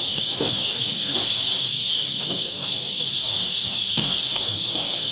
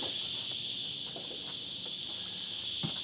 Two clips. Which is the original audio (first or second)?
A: second